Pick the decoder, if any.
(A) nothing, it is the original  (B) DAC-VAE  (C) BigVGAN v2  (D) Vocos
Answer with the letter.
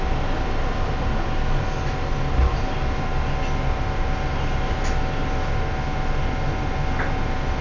A